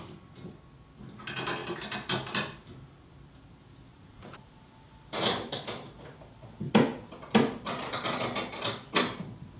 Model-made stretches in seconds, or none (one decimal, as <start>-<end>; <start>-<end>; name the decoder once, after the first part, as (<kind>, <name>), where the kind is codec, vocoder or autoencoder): 3.9-4.6 (vocoder, Vocos)